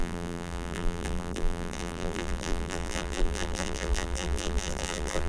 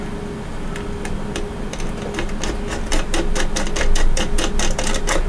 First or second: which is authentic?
second